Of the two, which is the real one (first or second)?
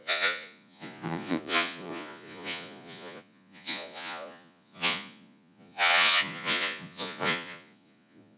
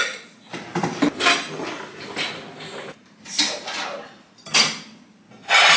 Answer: second